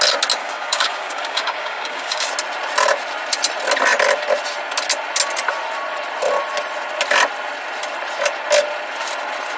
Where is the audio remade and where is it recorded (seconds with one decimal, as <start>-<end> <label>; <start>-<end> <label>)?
0.0-0.4 recorded; 0.4-2.3 remade; 2.3-9.6 recorded